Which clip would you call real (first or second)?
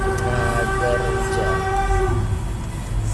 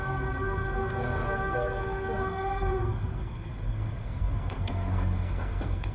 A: first